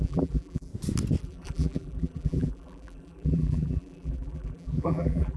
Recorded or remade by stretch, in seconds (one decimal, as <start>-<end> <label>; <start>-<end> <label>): 0.0-0.7 remade; 0.7-1.2 recorded; 1.2-5.4 remade